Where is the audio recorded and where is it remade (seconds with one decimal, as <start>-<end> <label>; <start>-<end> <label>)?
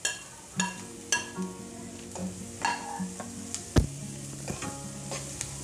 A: 0.0-5.6 recorded